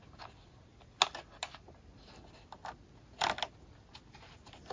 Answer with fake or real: real